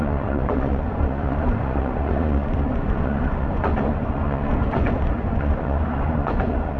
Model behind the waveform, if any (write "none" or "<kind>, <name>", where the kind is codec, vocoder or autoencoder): vocoder, Vocos